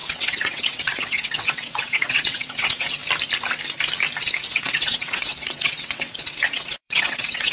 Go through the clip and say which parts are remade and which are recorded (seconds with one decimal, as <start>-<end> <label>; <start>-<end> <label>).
0.0-3.0 remade; 3.0-4.4 recorded; 4.4-7.5 remade